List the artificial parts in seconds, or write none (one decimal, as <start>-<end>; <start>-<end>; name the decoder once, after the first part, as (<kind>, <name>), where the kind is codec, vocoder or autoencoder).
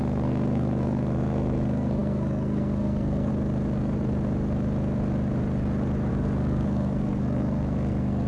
0.0-3.3 (codec, SNAC); 6.1-8.3